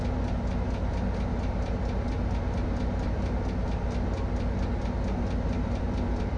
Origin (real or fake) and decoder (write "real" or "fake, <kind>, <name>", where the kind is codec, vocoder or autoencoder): real